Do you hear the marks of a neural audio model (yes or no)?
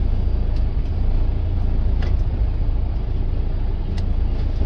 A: no